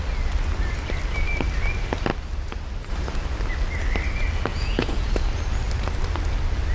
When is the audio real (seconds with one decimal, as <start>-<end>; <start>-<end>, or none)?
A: 0.0-4.5; 5.1-6.7